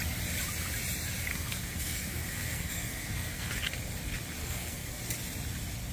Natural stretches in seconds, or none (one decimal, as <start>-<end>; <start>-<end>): 0.0-1.3; 3.5-4.4; 5.0-5.9